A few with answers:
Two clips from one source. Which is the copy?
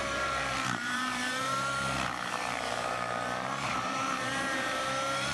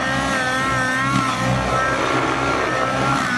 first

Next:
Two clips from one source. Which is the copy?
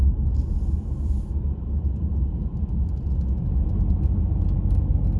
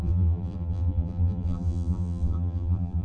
second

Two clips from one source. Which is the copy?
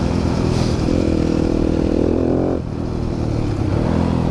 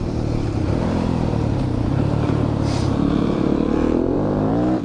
second